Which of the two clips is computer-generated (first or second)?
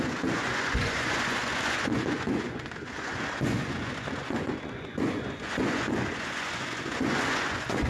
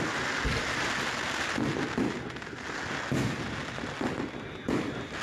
first